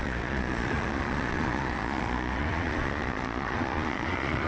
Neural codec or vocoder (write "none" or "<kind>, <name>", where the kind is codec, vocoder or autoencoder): vocoder, Vocos